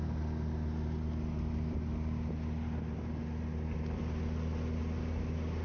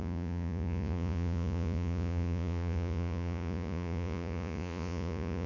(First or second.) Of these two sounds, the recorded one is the first